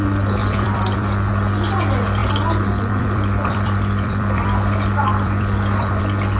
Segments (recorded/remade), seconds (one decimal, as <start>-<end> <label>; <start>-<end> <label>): 0.0-0.4 recorded; 0.4-1.3 remade; 1.3-2.2 recorded; 2.2-6.0 remade; 6.0-6.4 recorded